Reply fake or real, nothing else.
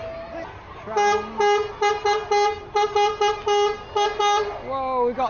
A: real